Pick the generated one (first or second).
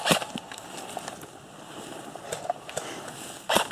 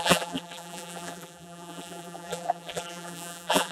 second